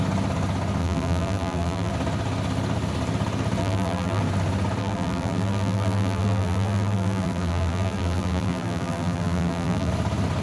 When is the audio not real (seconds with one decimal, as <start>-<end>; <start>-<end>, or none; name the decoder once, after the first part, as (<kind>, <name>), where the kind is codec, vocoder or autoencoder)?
0.8-1.9 (vocoder, BigVGAN v2); 3.6-4.2; 4.8-9.9